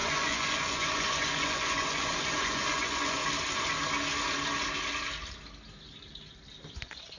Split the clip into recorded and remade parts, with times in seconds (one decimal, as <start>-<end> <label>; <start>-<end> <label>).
0.0-3.2 remade; 3.2-6.7 recorded; 6.7-7.2 remade